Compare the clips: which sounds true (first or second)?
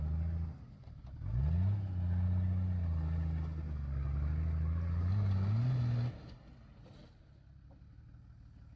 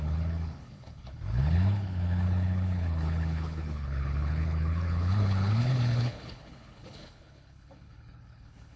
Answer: first